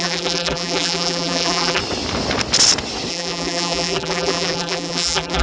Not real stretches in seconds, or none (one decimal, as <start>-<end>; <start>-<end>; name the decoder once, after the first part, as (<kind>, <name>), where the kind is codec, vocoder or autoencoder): 0.0-1.8 (vocoder, BigVGAN v2); 3.1-5.4